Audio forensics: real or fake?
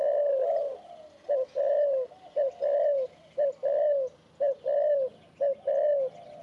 real